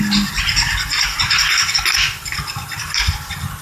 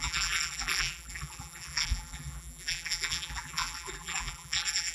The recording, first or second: first